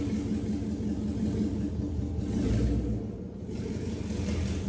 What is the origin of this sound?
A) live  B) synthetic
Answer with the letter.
A